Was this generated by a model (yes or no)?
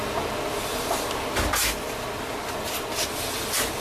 no